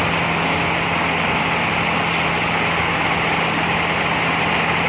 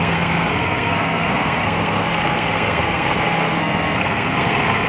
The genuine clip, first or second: first